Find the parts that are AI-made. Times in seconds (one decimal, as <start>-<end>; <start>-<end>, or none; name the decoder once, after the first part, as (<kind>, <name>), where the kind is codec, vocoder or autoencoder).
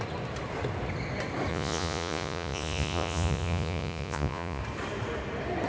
1.5-4.6 (vocoder, Vocos)